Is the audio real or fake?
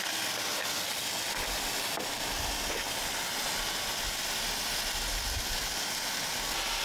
real